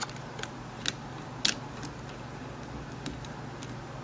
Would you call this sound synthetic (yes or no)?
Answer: no